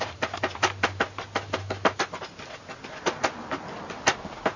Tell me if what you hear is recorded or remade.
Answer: recorded